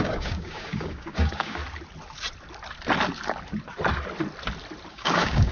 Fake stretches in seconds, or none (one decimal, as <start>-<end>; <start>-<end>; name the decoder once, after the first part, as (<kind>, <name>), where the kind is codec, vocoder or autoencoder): 0.0-1.6 (codec, DAC); 4.9-5.5